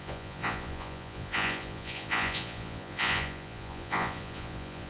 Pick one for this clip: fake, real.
fake